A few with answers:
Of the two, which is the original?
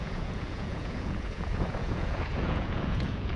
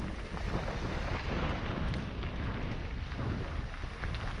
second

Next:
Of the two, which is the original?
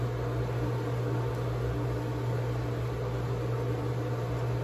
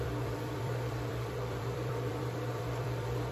first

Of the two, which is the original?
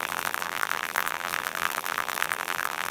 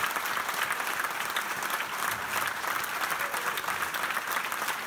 second